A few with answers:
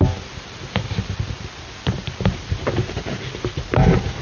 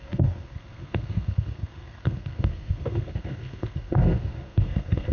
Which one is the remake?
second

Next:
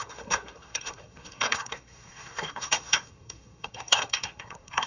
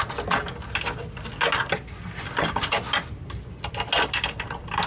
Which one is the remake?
first